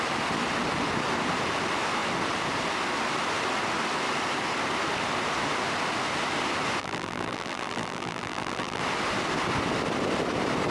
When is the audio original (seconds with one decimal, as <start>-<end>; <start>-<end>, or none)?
0.0-6.8; 8.8-10.7

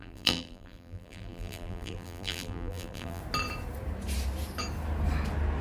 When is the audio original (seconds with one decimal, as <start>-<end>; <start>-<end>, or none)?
3.2-5.6

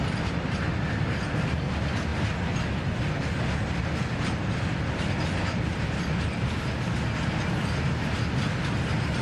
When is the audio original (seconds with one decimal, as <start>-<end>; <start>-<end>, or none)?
0.0-9.2

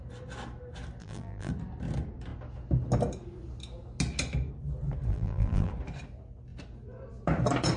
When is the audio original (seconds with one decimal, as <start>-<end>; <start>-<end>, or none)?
0.0-1.0; 1.5-5.1; 5.7-7.8

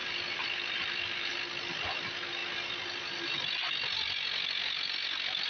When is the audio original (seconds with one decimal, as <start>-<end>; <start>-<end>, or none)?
1.3-5.5

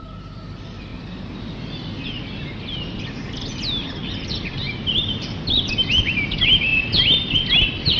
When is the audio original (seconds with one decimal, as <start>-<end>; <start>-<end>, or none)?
0.0-6.7; 7.4-8.0